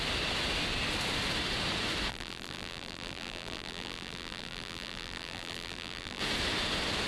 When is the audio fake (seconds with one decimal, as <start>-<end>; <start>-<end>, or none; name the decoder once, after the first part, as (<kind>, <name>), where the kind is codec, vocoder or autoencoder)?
2.1-6.2 (vocoder, BigVGAN v2)